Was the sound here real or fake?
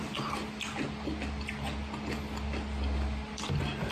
real